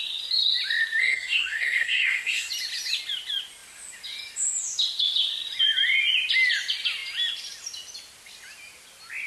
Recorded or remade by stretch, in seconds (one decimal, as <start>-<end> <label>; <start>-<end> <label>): 0.0-1.0 recorded; 1.0-2.5 remade; 2.5-9.3 recorded